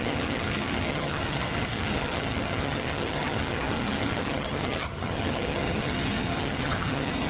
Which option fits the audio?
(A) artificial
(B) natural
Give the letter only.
A